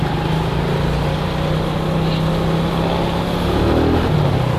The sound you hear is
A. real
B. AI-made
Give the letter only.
A